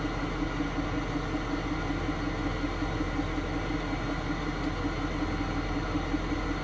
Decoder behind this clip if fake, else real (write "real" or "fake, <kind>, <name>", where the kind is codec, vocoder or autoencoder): real